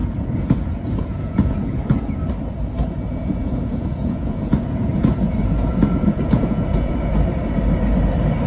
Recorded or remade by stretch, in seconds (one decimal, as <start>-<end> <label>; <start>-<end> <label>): 0.0-2.3 remade; 2.3-3.2 recorded; 3.2-7.1 remade; 7.1-8.5 recorded